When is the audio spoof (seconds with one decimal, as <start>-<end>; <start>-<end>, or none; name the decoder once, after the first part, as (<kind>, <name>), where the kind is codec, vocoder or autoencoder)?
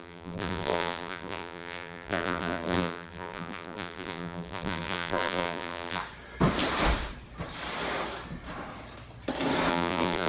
0.0-6.0 (vocoder, BigVGAN v2); 9.7-10.3